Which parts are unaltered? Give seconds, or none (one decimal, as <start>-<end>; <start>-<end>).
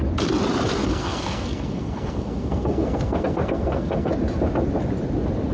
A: 0.0-0.8; 4.1-5.5